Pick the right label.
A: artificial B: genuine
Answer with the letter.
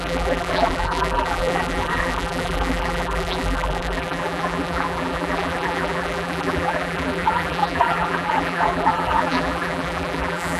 A